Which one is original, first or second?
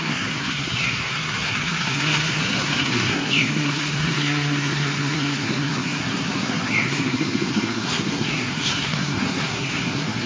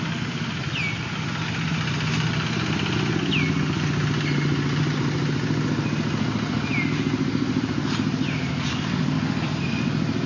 second